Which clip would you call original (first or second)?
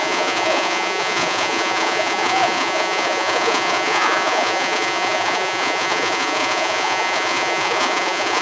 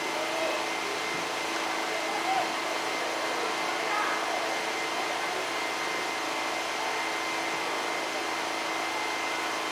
second